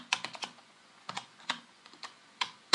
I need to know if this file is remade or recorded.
remade